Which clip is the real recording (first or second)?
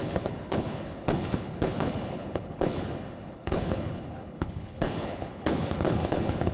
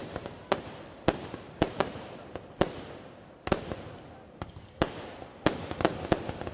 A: second